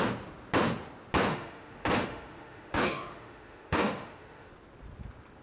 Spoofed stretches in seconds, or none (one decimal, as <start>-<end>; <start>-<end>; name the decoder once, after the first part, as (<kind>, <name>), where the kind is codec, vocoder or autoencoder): 1.3-4.5 (autoencoder, DAC-VAE)